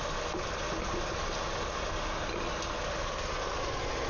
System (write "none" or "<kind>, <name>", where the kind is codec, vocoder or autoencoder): none